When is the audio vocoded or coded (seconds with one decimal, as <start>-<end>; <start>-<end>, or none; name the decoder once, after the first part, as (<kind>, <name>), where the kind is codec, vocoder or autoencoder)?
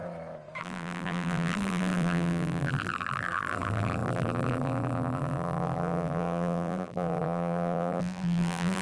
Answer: 0.6-8.8 (vocoder, BigVGAN v2)